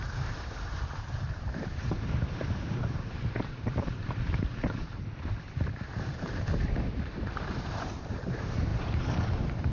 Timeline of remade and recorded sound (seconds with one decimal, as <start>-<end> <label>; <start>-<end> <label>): 0.0-4.6 remade; 4.6-5.1 recorded; 5.1-9.7 remade